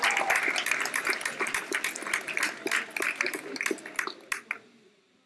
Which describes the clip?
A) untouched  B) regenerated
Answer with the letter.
A